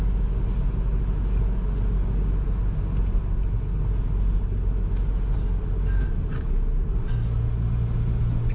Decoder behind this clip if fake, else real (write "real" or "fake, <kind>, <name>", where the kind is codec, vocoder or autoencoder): real